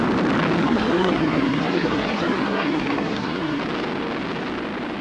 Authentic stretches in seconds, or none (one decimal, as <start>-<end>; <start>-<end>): 0.0-0.6; 3.6-5.0